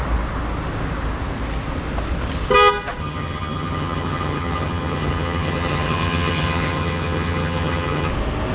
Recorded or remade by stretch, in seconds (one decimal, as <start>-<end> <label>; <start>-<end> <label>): 0.0-3.0 recorded; 3.0-8.1 remade; 8.1-8.5 recorded